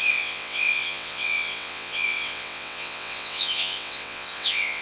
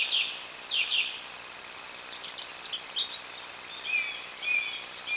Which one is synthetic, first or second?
first